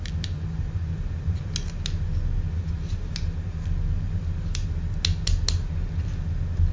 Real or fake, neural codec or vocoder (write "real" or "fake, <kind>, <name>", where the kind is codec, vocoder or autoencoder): real